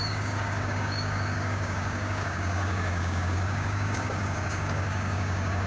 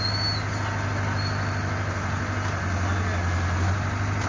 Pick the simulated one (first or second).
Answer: first